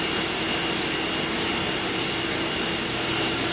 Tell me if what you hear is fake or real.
real